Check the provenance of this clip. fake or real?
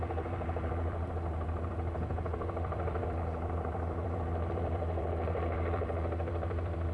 fake